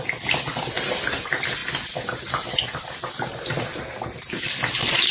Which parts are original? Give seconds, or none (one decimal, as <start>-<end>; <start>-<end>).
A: 0.0-5.1